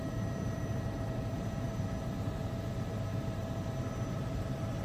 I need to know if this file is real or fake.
fake